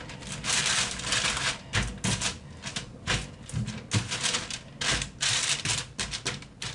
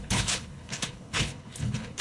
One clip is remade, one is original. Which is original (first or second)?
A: first